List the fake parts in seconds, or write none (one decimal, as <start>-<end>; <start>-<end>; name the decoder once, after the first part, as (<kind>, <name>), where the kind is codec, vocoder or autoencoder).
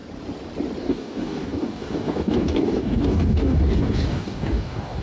0.8-5.0 (codec, DAC)